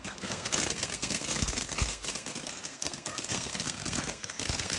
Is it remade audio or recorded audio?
remade